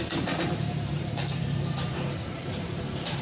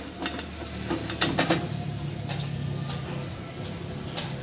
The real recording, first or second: second